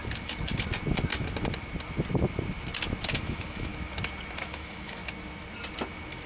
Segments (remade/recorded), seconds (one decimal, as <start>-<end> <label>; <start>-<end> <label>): 0.0-3.1 recorded; 3.1-3.7 remade; 3.7-4.4 recorded; 4.4-5.0 remade; 5.0-6.3 recorded